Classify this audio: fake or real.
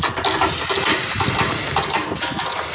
real